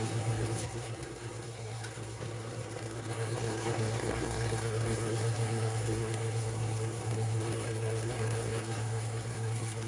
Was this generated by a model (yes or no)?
yes